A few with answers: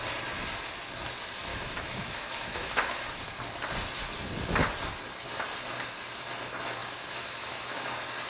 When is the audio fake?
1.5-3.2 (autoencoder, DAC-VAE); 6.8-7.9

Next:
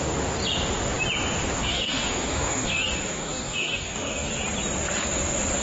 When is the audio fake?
1.6-4.3 (codec, DAC)

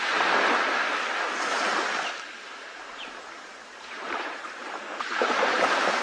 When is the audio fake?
2.6-6.0 (vocoder, BigVGAN v2)

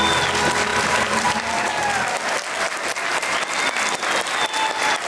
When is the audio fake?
0.7-1.7 (vocoder, BigVGAN v2)

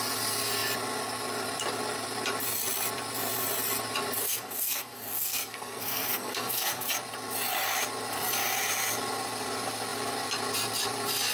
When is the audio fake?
4.2-6.9 (codec, SNAC)

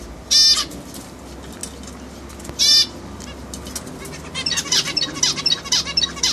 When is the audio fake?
none

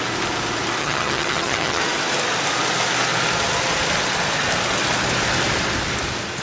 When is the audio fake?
0.8-1.8 (vocoder, HiFi-GAN)